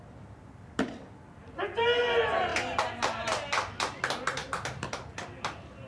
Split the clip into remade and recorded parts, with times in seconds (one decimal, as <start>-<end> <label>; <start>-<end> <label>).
0.0-5.9 recorded